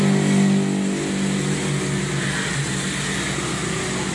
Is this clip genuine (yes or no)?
yes